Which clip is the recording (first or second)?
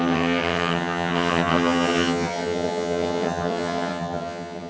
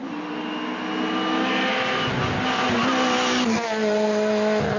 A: second